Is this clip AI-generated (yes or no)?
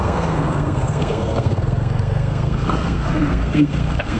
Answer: yes